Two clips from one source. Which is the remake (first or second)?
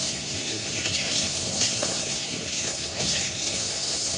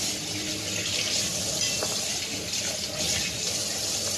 first